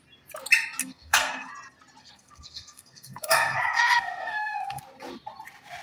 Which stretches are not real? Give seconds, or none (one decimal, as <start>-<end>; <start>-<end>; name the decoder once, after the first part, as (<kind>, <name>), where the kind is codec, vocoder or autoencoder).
0.8-1.5 (codec, SNAC); 2.0-4.8